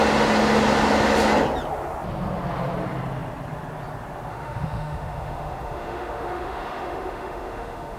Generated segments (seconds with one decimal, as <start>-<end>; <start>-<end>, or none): 4.3-8.0